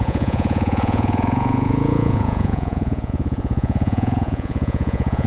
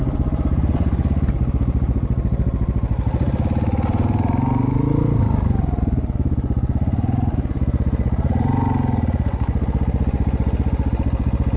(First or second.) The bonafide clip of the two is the second